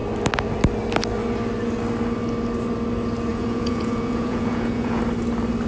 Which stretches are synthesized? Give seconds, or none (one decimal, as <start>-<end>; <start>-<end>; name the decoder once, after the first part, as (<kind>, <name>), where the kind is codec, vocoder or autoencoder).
3.3-5.0 (vocoder, Vocos)